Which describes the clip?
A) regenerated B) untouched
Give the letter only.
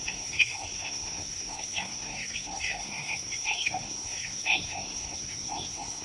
A